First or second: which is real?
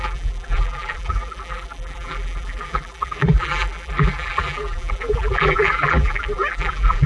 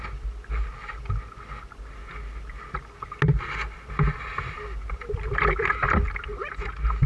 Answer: second